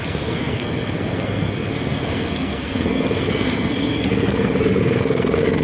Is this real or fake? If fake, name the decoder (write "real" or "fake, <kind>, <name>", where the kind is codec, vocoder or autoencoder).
fake, codec, SNAC